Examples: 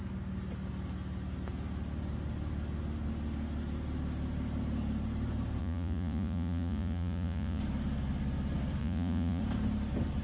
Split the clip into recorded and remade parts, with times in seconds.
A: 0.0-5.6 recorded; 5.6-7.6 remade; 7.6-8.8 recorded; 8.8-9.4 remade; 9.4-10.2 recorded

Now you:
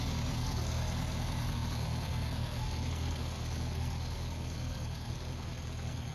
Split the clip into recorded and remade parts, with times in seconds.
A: 0.0-6.1 remade

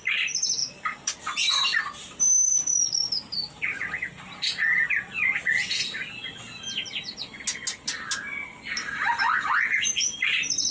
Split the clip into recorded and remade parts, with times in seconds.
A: 0.0-6.2 remade; 6.2-8.5 recorded; 8.5-10.7 remade